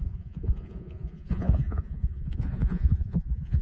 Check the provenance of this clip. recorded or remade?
remade